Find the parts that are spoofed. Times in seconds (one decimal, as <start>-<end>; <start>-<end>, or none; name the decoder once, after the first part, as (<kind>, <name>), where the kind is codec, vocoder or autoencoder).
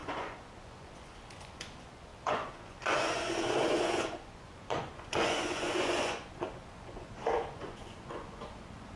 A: 0.0-9.0 (vocoder, Vocos)